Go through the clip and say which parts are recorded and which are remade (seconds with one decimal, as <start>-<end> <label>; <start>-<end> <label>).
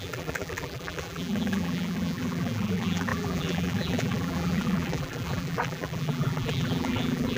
0.0-7.4 remade